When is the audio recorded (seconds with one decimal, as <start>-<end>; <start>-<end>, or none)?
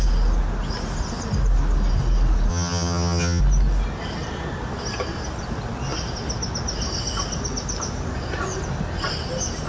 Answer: 0.0-2.5; 3.4-9.7